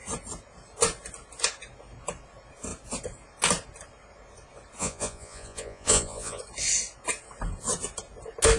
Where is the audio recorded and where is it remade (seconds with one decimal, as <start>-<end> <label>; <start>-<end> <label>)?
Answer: 0.0-4.8 recorded; 4.8-6.4 remade; 6.4-8.6 recorded